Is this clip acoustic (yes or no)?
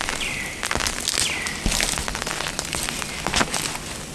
yes